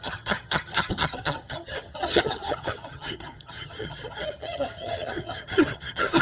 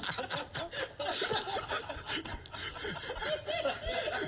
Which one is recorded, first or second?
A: second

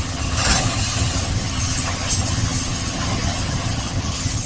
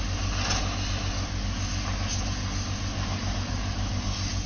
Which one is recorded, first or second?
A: second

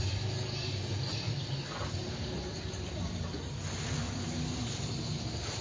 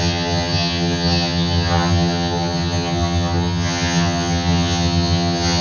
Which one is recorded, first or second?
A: first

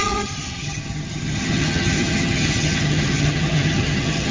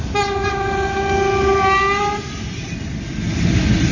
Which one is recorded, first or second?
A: second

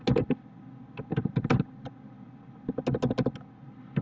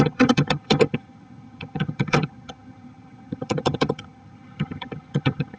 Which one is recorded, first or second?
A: first